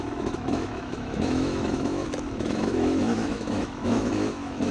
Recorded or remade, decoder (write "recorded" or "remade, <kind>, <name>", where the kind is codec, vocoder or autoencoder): remade, autoencoder, DAC-VAE